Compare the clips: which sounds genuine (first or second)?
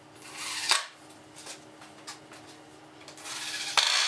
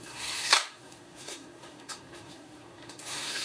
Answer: first